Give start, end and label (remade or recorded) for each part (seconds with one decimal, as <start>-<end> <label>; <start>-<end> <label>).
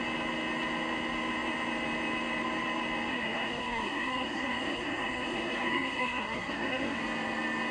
0.0-3.1 recorded; 3.1-7.0 remade; 7.0-7.7 recorded